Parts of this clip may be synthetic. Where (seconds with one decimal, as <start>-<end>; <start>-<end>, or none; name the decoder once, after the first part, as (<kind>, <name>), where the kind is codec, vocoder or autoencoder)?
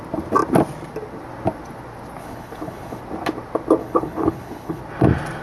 2.2-3.0 (codec, HILCodec); 3.8-4.8